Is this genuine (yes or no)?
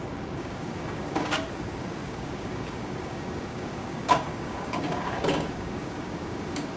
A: no